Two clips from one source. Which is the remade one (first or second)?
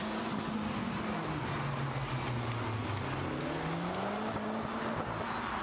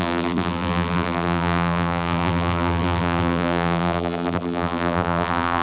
second